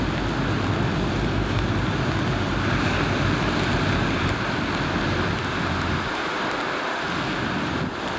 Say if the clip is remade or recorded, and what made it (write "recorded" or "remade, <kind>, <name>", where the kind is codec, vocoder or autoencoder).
recorded